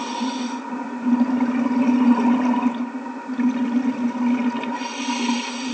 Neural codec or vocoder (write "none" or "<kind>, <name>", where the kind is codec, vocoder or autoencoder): none